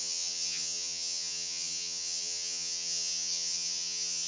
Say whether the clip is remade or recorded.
remade